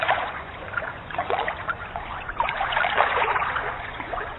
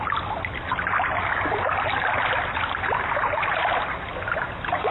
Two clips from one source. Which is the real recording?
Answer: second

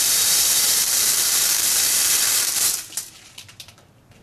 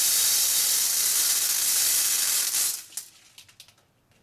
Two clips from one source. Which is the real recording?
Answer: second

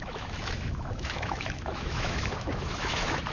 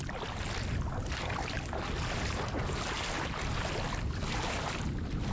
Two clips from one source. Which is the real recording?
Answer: second